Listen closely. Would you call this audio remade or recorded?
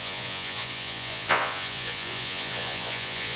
remade